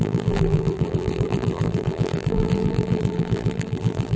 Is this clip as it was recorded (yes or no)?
no